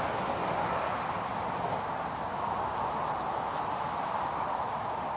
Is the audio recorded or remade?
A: recorded